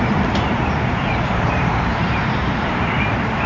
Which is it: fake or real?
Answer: fake